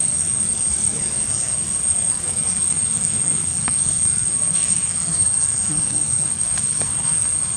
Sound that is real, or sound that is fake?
fake